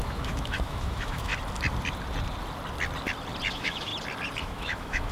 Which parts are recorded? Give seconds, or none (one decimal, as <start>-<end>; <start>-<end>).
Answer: 1.3-3.5; 3.9-4.4